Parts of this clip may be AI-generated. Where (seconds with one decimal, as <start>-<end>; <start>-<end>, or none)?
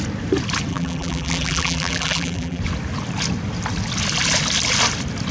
0.7-2.6